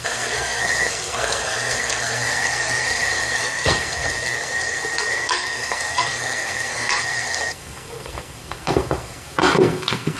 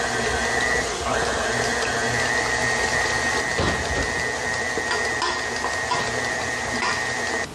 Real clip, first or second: second